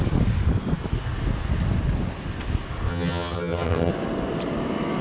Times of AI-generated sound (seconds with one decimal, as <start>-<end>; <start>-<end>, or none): 2.9-3.9